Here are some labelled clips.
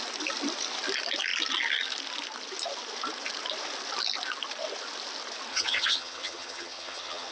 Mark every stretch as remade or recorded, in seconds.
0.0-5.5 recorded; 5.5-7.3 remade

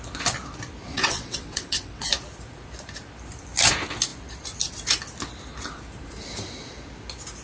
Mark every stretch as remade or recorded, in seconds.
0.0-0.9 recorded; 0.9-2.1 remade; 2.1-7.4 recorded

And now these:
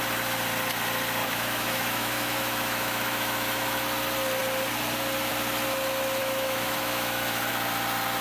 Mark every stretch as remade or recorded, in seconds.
0.0-1.2 recorded; 1.2-3.8 remade; 3.8-6.2 recorded; 6.2-7.5 remade; 7.5-8.2 recorded